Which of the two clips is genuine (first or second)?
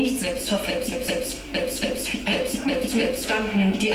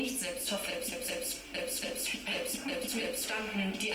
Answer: second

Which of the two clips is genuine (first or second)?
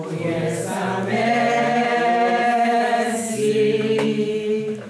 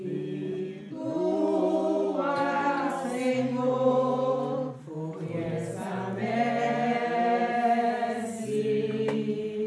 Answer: second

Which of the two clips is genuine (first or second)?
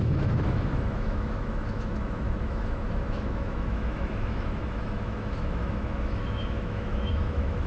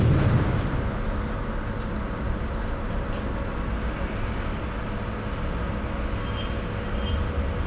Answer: second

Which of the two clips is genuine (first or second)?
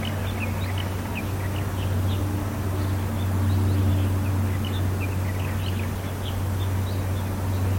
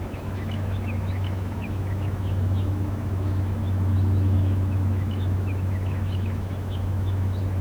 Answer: first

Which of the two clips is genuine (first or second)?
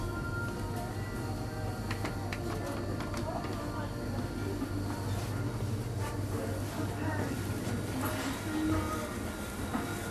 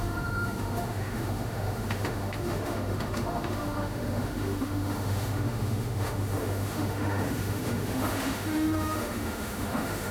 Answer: first